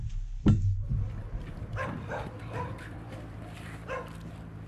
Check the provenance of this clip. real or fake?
fake